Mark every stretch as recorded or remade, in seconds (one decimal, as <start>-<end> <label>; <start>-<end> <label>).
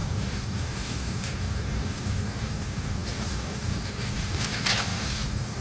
0.0-5.6 remade